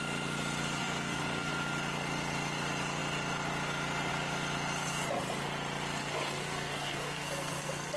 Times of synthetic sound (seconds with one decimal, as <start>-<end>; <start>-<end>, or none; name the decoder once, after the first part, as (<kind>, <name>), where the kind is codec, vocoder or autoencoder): 0.8-1.5 (codec, SNAC); 6.0-8.0